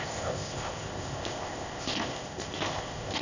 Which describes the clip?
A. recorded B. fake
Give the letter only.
B